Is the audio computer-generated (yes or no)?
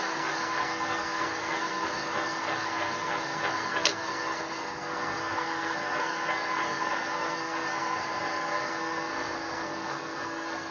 yes